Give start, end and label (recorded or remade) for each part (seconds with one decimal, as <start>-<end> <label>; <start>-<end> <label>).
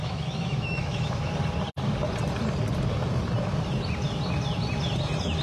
0.0-1.3 remade; 1.3-5.4 recorded